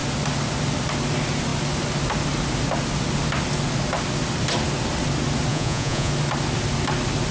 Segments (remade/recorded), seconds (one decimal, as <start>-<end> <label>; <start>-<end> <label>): 0.0-5.5 recorded; 5.5-6.1 remade; 6.1-7.3 recorded